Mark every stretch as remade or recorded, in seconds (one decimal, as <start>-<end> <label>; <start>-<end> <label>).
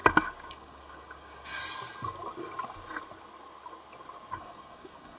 0.0-0.5 recorded; 0.5-1.6 remade; 1.6-4.4 recorded; 4.4-5.2 remade